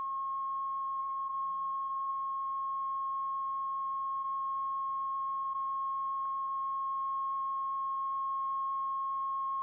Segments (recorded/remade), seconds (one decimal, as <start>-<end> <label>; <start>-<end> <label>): 0.0-1.0 recorded; 1.0-2.1 remade; 2.1-9.6 recorded

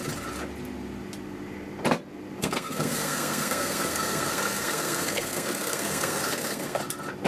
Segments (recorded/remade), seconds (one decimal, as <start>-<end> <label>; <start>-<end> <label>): 0.0-2.4 recorded; 2.4-6.8 remade; 6.8-7.3 recorded

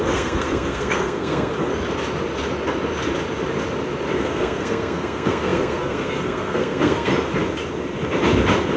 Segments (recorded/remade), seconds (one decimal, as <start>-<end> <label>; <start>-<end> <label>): 0.0-1.5 remade; 1.5-4.2 recorded; 4.2-7.1 remade; 7.1-8.8 recorded

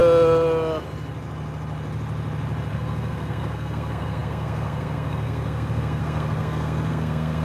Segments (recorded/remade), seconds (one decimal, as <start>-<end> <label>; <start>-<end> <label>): 0.0-2.7 recorded; 2.7-7.4 remade

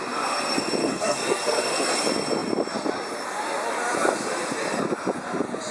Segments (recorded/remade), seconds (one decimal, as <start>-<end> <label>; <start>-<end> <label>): 0.0-0.8 recorded; 0.8-1.9 remade; 1.9-5.7 recorded